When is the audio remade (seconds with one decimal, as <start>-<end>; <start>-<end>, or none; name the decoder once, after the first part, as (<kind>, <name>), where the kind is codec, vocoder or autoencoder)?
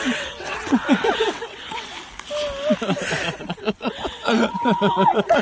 0.0-1.9 (vocoder, WaveNeXt); 3.4-5.4